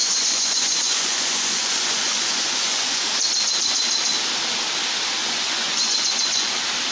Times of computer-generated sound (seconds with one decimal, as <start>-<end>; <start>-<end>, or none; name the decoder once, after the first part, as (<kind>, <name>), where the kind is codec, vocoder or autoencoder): 0.0-3.1 (vocoder, Vocos); 5.2-6.5